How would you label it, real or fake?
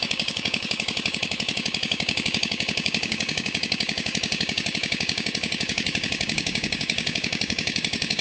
fake